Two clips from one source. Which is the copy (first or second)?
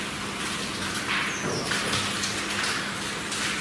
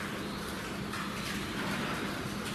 second